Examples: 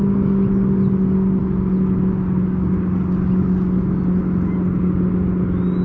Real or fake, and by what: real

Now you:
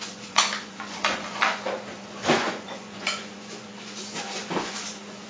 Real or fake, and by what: fake, vocoder, Vocos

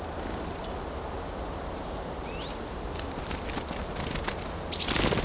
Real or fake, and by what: real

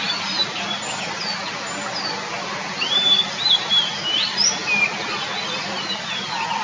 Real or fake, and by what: real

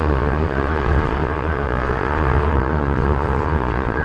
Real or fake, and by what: fake, vocoder, Vocos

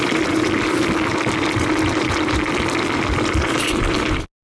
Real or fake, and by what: real